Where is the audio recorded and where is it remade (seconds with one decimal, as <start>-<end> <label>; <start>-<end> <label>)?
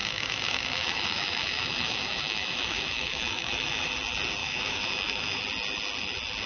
0.0-3.9 remade; 3.9-4.4 recorded; 4.4-5.4 remade; 5.4-6.5 recorded